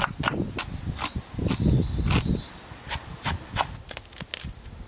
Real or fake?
real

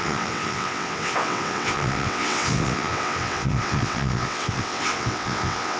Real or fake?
fake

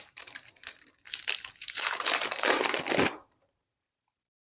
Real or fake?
fake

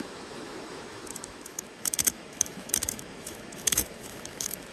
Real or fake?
fake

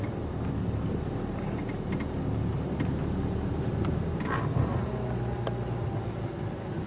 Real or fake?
real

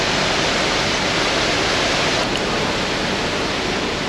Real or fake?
real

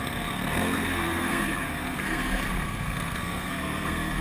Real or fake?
fake